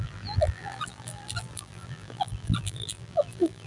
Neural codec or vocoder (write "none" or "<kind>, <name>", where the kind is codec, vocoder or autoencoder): vocoder, BigVGAN v2